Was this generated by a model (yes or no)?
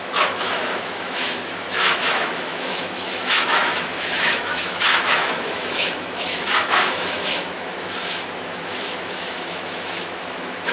yes